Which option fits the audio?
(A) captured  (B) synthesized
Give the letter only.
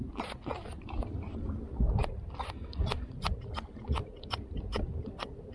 A